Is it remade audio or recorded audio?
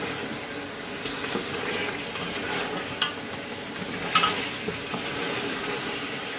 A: recorded